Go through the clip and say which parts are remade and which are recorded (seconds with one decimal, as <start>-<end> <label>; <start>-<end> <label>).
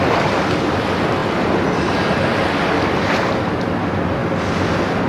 0.0-1.2 recorded; 1.2-1.9 remade; 1.9-4.2 recorded; 4.2-5.1 remade